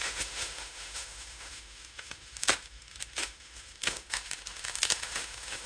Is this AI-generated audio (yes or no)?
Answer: yes